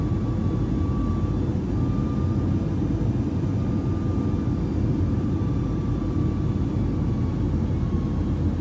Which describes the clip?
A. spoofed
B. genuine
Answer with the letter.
B